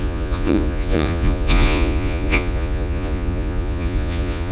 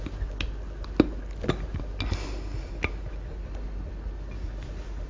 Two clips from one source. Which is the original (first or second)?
second